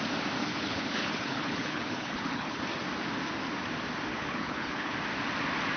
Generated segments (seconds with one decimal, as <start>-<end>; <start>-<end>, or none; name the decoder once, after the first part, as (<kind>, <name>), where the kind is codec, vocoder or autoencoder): 0.4-2.6 (codec, HILCodec); 4.1-4.9